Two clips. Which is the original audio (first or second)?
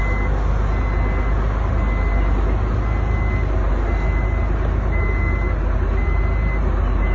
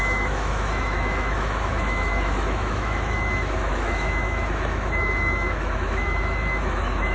first